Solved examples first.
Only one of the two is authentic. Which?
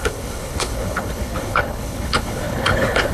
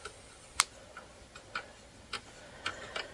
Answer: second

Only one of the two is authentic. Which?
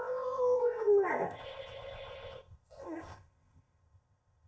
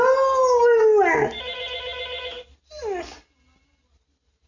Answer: second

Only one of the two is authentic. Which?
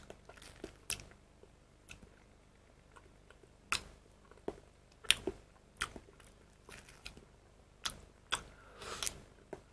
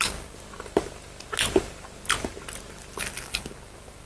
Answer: first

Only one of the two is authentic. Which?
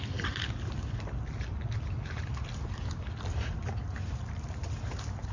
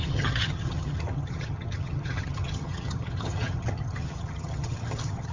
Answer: first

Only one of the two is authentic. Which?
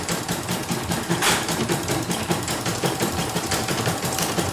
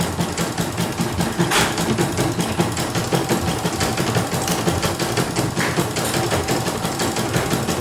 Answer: second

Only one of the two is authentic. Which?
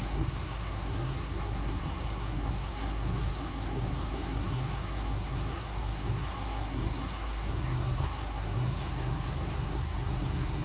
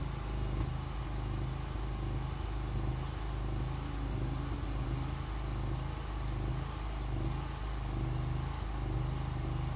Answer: second